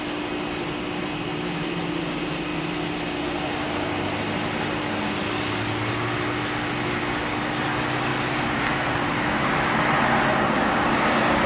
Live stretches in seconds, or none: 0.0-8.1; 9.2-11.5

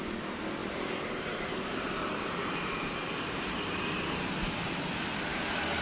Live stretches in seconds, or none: 0.0-0.6; 4.1-5.8

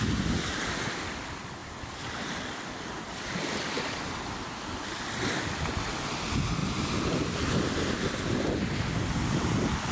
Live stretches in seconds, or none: 0.0-1.6; 3.0-6.6; 8.0-9.9

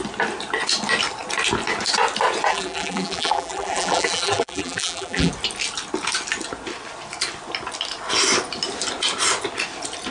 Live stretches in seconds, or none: 0.0-2.5; 5.3-10.1

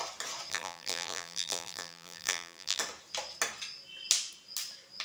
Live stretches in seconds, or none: 0.0-0.5; 2.8-5.0

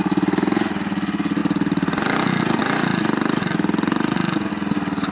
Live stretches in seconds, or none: 0.0-5.1

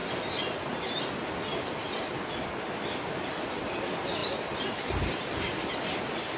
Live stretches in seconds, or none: 1.0-4.2; 6.0-6.4

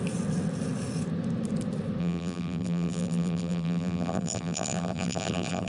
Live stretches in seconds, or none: 0.0-2.0